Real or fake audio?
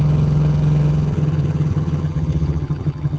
fake